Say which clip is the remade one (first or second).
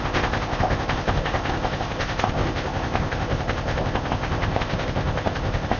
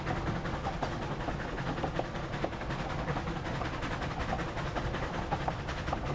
first